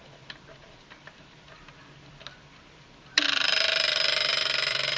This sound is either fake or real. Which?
fake